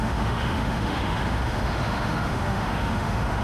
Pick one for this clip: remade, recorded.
remade